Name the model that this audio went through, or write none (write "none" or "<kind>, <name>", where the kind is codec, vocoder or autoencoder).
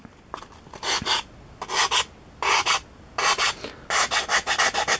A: none